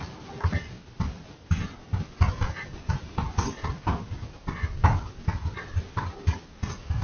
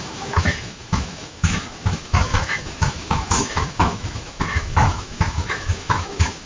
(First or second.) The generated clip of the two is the second